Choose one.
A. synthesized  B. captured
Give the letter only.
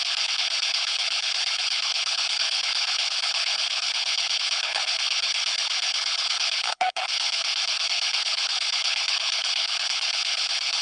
A